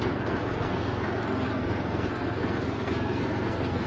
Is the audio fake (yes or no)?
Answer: yes